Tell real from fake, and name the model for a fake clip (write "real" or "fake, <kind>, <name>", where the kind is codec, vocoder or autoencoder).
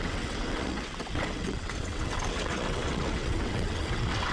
fake, vocoder, WaveNeXt